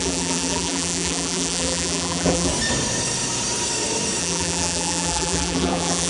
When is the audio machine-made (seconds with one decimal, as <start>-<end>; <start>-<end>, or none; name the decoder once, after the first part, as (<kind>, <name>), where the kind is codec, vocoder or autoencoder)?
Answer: 0.0-2.5 (vocoder, BigVGAN v2); 4.2-6.1